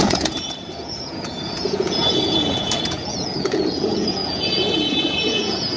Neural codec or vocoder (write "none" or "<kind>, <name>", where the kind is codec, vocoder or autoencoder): vocoder, Vocos